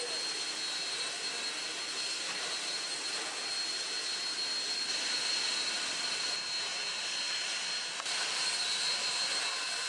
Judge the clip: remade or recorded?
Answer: recorded